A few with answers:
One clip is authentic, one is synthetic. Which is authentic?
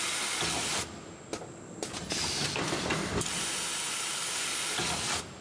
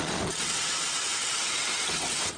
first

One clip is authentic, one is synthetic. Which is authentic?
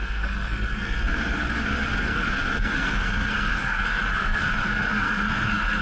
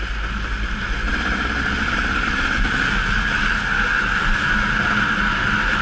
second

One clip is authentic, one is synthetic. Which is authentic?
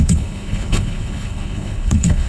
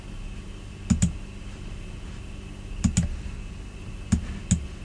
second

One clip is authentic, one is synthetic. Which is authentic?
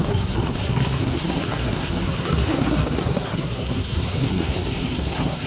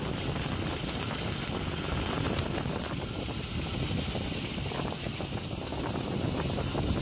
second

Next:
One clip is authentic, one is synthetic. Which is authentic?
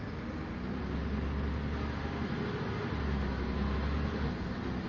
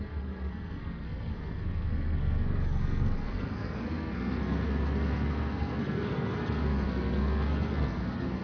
first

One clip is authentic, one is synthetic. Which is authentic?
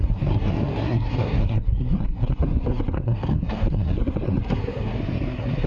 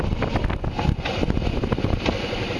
second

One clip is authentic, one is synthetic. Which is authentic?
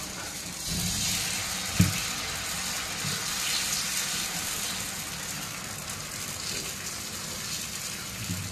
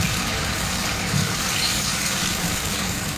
first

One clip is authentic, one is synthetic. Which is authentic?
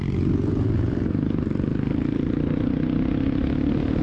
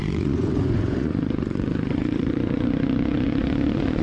first